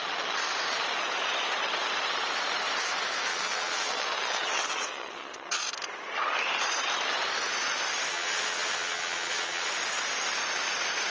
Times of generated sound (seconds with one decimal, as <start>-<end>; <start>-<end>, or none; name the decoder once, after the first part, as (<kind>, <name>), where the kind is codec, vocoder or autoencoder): 3.3-5.6 (vocoder, WaveNeXt); 8.1-9.7